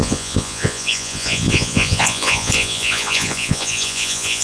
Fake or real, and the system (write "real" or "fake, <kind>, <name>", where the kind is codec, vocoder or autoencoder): fake, vocoder, Vocos